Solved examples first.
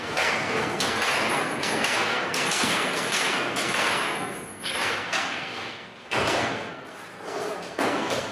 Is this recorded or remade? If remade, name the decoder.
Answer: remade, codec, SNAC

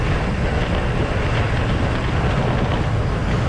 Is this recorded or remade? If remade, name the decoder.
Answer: recorded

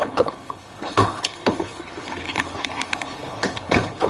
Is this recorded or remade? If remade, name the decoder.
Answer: remade, codec, HILCodec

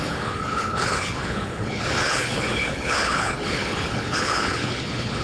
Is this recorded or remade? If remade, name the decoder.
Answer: remade, codec, HILCodec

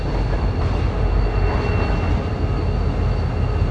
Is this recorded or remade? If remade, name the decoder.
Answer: recorded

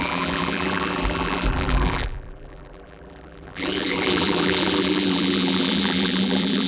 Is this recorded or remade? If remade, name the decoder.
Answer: remade, vocoder, BigVGAN v2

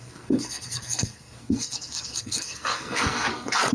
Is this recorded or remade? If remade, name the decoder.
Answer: remade, codec, SNAC